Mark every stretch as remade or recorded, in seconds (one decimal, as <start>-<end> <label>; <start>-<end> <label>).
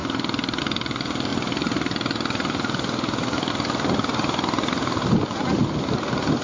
0.0-6.4 recorded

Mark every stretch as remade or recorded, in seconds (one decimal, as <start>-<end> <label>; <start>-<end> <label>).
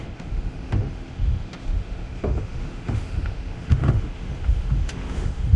0.0-5.6 remade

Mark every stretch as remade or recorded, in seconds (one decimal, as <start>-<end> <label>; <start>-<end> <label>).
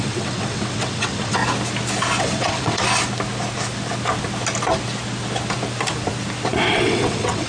0.0-1.4 remade; 1.4-2.2 recorded; 2.2-2.8 remade; 2.8-6.7 recorded; 6.7-7.5 remade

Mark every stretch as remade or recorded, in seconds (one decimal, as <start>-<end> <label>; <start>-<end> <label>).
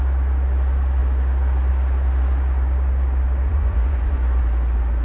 0.0-3.5 recorded; 3.5-4.4 remade; 4.4-5.0 recorded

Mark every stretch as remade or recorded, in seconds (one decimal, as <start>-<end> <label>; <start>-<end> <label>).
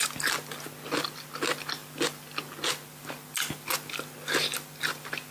0.0-5.3 recorded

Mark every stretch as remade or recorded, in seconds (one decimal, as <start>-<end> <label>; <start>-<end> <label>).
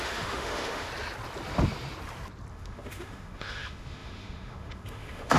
0.0-0.9 remade; 0.9-2.5 recorded; 2.5-5.4 remade